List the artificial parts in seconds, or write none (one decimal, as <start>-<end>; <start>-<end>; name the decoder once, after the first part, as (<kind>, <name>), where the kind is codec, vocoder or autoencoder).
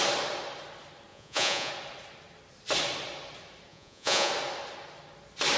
1.1-1.7 (vocoder, Vocos); 3.7-4.3